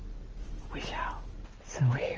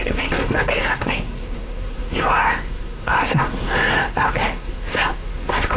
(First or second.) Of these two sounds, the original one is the first